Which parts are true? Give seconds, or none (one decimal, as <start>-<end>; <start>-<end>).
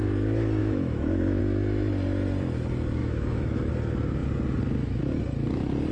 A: 0.0-0.6; 1.4-3.0; 3.7-5.9